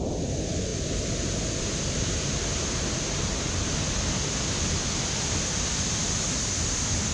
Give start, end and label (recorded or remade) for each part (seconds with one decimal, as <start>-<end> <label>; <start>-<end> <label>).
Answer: 0.0-7.1 recorded